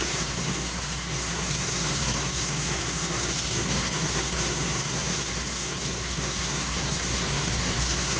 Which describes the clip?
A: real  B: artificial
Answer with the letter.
B